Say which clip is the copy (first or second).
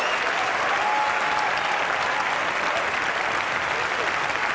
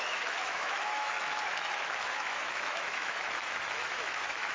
second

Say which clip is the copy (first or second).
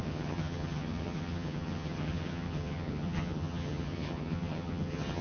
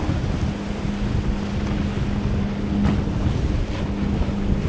first